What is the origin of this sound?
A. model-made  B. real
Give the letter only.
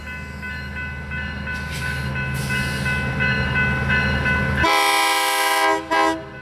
B